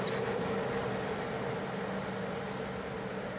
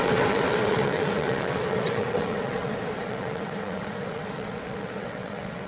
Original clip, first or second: first